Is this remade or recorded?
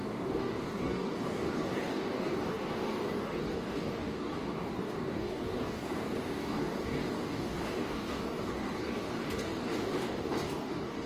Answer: remade